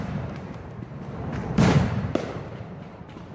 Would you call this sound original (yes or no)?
no